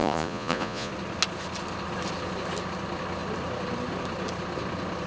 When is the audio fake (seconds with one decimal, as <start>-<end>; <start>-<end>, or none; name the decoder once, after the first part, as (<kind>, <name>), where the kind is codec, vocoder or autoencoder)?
0.0-0.9 (vocoder, Vocos)